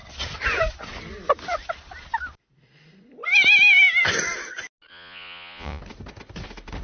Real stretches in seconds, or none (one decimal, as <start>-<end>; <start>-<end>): 0.0-4.9; 5.8-6.8